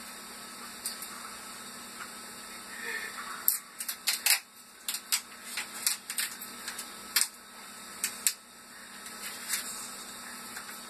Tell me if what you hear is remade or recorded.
recorded